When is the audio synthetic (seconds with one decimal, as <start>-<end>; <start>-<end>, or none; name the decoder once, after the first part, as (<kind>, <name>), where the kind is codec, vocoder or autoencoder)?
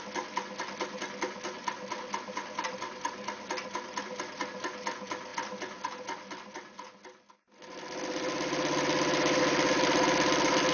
none